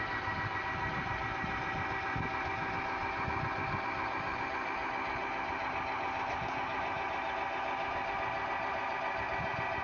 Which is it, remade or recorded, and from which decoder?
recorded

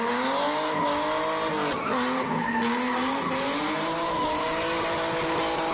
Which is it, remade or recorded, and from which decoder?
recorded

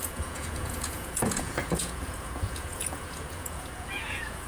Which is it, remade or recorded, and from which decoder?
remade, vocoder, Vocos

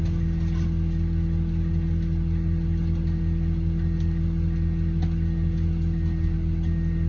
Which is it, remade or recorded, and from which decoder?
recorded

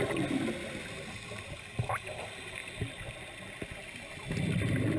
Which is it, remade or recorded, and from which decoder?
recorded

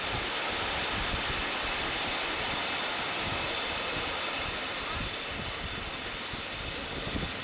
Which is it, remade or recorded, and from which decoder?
recorded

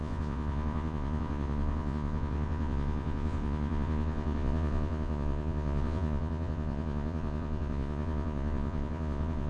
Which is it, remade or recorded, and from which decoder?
remade, vocoder, Vocos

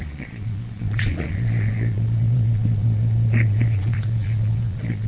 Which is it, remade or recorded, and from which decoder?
remade, vocoder, Vocos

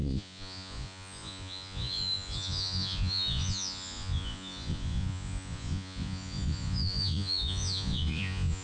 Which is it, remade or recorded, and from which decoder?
remade, vocoder, Vocos